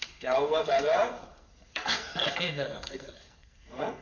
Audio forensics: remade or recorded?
remade